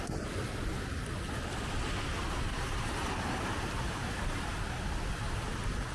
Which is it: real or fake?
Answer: real